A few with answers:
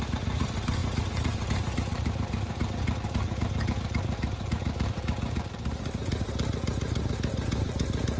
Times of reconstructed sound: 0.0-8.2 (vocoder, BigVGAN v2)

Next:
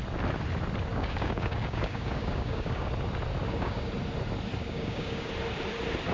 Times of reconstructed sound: 0.9-2.9 (codec, DAC); 3.4-3.9; 4.6-5.3

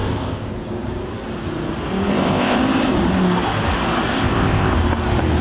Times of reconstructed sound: 0.0-0.5 (codec, ZipCodec); 2.1-2.6; 4.1-4.7